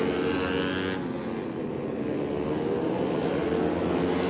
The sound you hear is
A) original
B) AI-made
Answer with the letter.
A